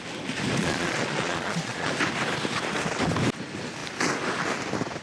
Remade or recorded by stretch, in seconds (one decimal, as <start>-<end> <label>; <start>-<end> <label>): 0.0-0.6 recorded; 0.6-1.9 remade; 1.9-5.0 recorded